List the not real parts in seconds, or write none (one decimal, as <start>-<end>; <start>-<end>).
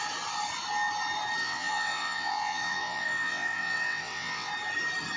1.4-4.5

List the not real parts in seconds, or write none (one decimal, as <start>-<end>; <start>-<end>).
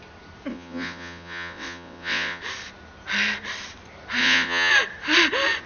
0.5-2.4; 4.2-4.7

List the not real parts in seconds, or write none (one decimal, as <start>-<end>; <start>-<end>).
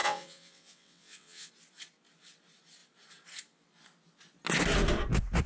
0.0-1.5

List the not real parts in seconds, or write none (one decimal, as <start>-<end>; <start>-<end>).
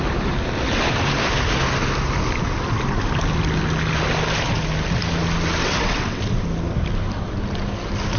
5.6-6.2